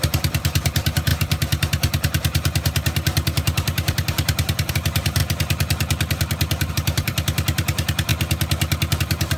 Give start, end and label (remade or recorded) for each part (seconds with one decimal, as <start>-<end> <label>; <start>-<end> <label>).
0.0-5.2 remade; 5.2-6.7 recorded; 6.7-8.1 remade; 8.1-9.0 recorded; 9.0-9.4 remade

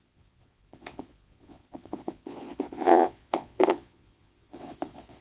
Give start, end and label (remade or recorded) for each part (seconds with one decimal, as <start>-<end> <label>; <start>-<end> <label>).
0.0-5.2 remade

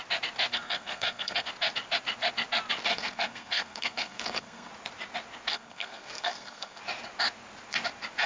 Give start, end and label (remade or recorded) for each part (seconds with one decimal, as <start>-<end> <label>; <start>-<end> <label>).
0.0-0.5 recorded; 0.5-1.5 remade; 1.5-2.9 recorded; 2.9-4.7 remade; 4.7-5.5 recorded; 5.5-6.8 remade; 6.8-8.3 recorded

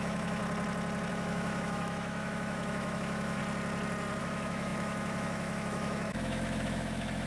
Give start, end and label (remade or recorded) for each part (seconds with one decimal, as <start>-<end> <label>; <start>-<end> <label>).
0.0-0.4 remade; 0.4-1.1 recorded; 1.1-3.4 remade; 3.4-4.2 recorded; 4.2-7.3 remade

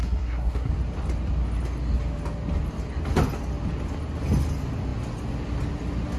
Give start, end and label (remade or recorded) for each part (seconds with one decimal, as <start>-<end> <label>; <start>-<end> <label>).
0.0-0.7 remade; 0.7-6.2 recorded

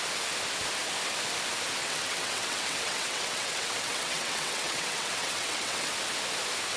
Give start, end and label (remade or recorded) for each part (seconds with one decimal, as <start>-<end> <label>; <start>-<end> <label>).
0.0-1.8 recorded; 1.8-5.9 remade; 5.9-6.8 recorded